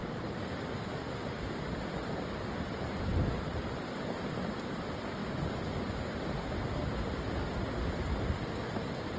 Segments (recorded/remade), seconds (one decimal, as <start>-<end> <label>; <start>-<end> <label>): 0.0-2.1 remade; 2.1-3.1 recorded; 3.1-3.8 remade; 3.8-9.2 recorded